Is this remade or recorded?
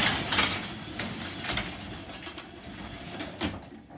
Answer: recorded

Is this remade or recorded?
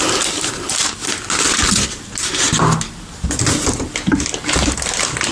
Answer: recorded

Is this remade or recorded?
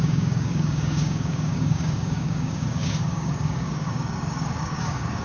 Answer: remade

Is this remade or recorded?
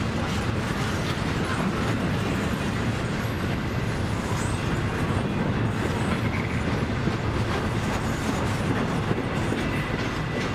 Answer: recorded